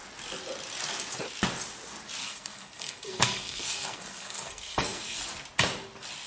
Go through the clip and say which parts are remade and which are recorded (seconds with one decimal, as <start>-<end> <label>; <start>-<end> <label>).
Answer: 0.0-2.2 recorded; 2.2-5.2 remade; 5.2-6.3 recorded

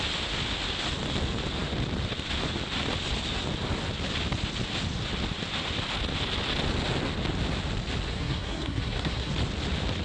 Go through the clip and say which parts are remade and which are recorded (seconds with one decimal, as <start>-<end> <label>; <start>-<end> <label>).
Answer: 0.0-8.1 recorded; 8.1-9.3 remade; 9.3-10.0 recorded

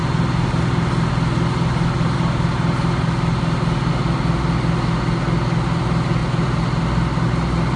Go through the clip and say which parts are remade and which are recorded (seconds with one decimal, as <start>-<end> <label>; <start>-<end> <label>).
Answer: 0.0-7.8 recorded